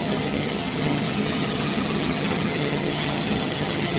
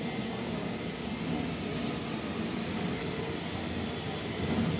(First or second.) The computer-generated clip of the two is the first